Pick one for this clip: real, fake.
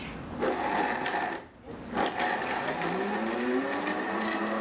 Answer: real